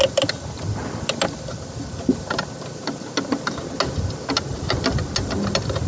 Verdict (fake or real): real